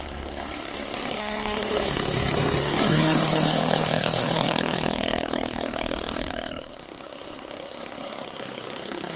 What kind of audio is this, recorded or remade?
remade